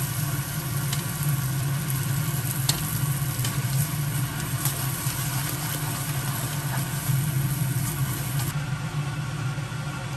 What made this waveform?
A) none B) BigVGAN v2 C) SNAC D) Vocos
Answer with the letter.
A